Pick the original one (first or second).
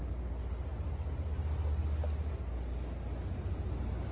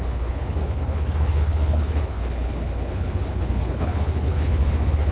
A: first